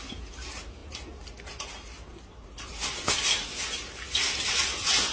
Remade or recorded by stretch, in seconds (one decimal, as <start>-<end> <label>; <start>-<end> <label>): 0.0-5.1 recorded